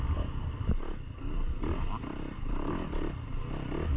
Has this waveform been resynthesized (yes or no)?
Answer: no